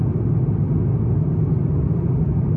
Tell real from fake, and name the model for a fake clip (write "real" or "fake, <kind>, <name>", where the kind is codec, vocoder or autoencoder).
real